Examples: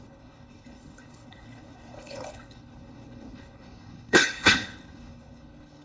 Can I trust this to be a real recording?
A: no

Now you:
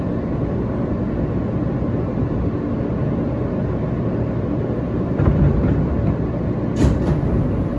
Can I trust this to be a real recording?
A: yes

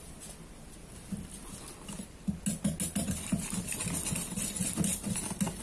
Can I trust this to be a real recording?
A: yes